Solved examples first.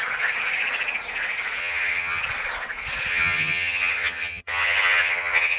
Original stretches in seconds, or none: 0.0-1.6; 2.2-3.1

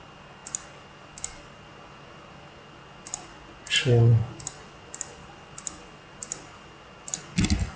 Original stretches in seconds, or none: 0.0-7.8

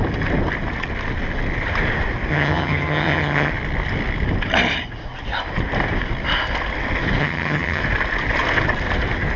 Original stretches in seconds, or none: 0.0-2.3; 3.5-7.2; 7.8-9.4